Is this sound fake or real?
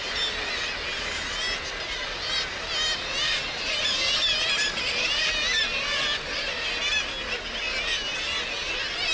real